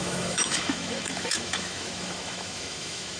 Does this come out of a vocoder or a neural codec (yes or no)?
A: yes